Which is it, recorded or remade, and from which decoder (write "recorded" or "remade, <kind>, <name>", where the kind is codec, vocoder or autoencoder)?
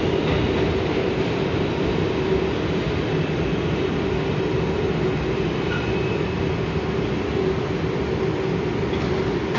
recorded